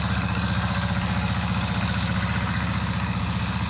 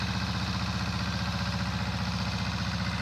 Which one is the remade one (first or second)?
first